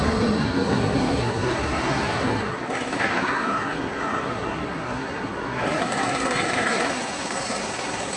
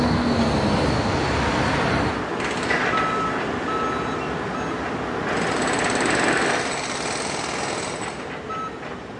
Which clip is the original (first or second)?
second